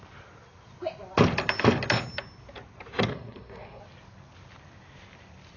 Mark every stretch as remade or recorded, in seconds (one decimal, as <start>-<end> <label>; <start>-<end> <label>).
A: 0.0-3.1 recorded; 3.1-3.8 remade; 3.8-5.6 recorded